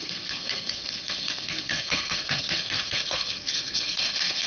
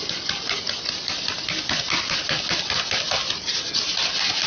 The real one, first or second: second